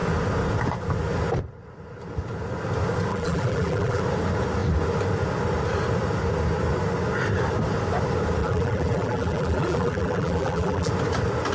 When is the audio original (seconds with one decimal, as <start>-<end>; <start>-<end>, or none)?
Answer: 0.0-3.1; 4.0-8.4; 10.9-11.5